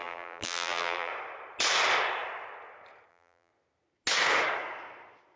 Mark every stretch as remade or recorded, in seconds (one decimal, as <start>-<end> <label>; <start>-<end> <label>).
0.0-1.1 remade; 1.1-3.1 recorded; 3.1-3.5 remade; 3.5-5.4 recorded